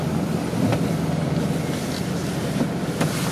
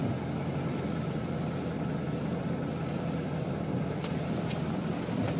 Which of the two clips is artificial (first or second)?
second